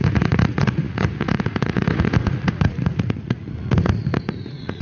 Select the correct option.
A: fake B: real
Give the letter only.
A